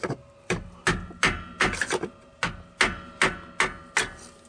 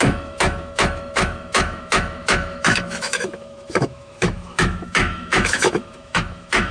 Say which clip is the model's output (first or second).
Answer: second